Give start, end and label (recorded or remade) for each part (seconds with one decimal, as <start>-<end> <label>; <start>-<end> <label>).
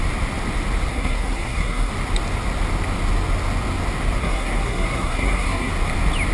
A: 0.0-0.9 recorded; 0.9-1.9 remade; 1.9-4.2 recorded; 4.2-5.7 remade; 5.7-6.3 recorded